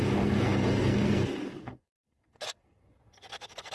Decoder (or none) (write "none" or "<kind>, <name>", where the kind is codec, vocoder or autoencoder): codec, SNAC